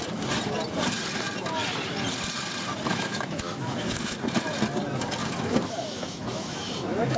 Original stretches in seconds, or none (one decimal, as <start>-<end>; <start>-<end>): 0.0-2.9; 4.2-5.2